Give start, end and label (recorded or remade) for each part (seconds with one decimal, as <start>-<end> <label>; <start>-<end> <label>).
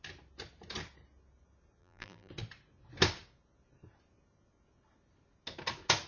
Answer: 0.0-1.8 recorded; 1.8-2.3 remade; 2.3-6.1 recorded